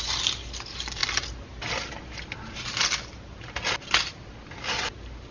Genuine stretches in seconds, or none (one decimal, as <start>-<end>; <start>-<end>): 0.0-5.3